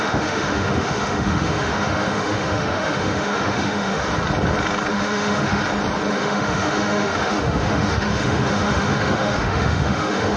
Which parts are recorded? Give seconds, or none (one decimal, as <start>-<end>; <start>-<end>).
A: 4.1-4.9; 5.6-6.1